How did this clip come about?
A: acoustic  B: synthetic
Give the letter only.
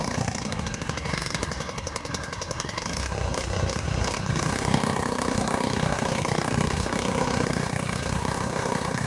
B